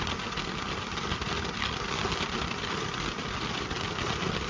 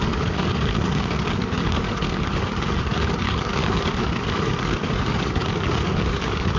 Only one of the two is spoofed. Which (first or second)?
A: second